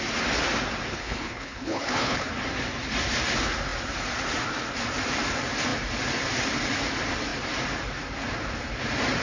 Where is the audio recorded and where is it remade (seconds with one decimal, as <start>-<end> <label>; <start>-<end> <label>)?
0.0-0.9 recorded; 0.9-2.3 remade; 2.3-9.2 recorded